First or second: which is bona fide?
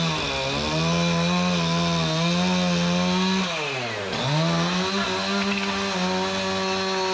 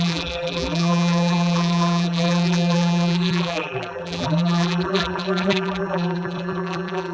first